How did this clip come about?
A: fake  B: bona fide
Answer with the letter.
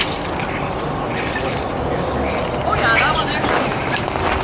B